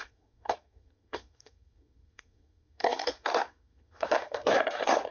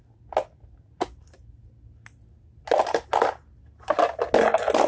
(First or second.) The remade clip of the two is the first